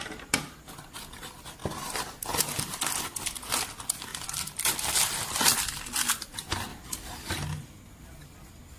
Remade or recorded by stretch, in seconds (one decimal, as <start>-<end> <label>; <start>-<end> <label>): 0.0-1.6 recorded; 1.6-3.0 remade; 3.0-4.1 recorded; 4.1-5.8 remade; 5.8-6.7 recorded; 6.7-7.3 remade; 7.3-8.8 recorded